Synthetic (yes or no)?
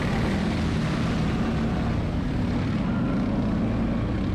no